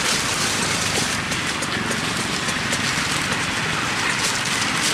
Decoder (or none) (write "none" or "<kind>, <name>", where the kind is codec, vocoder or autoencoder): none